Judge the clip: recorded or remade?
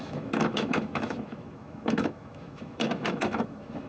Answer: remade